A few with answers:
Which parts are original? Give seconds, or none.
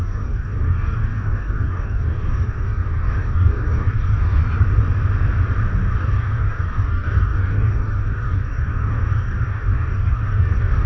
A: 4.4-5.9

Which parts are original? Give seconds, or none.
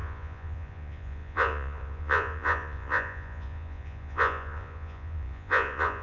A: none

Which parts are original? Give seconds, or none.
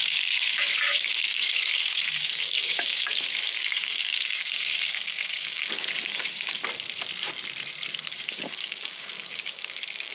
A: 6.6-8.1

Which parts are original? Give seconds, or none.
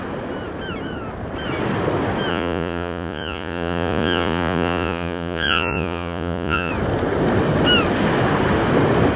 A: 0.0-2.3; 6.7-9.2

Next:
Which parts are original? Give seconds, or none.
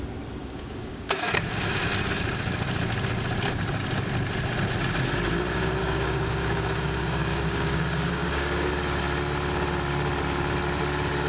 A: 0.0-0.4; 1.6-5.8; 8.7-11.3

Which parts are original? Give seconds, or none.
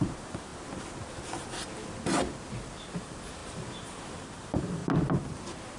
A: 0.5-3.0; 4.8-5.8